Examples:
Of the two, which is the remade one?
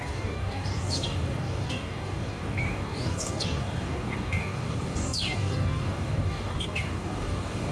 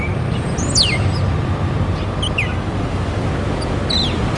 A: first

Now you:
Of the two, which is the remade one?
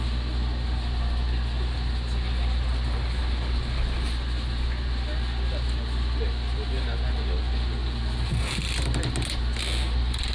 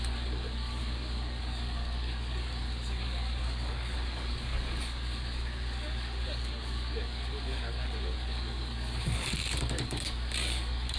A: second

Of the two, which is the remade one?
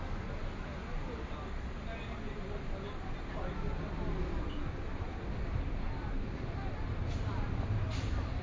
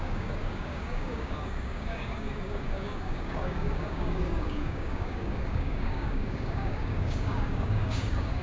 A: second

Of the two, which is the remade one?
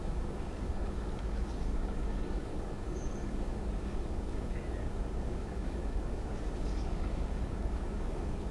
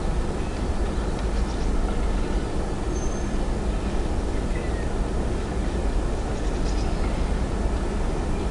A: first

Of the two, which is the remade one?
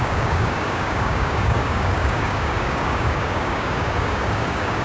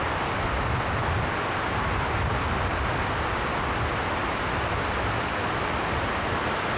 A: first